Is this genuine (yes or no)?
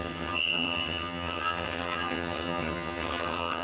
no